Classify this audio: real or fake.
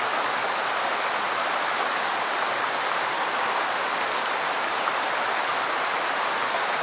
real